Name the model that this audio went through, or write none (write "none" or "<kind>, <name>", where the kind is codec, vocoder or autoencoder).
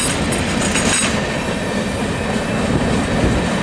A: none